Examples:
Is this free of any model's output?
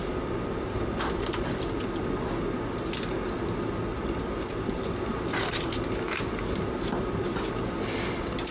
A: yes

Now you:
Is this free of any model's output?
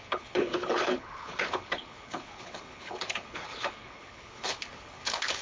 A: no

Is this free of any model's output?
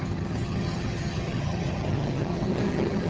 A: no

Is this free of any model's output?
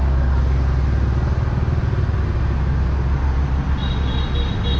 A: yes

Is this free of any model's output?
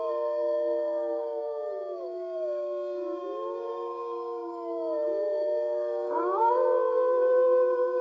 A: no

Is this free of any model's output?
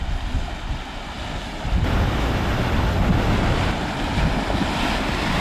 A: yes